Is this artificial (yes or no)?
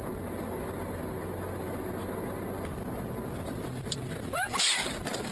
no